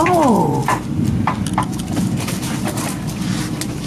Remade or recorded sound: remade